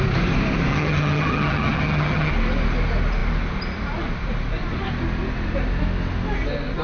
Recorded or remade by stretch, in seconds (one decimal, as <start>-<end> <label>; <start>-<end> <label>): 0.0-0.7 recorded; 0.7-2.3 remade; 2.3-6.8 recorded